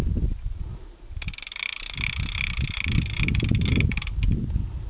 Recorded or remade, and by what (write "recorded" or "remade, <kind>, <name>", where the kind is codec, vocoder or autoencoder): recorded